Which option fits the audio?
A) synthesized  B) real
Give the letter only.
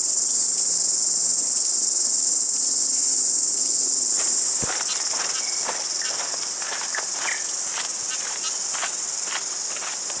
B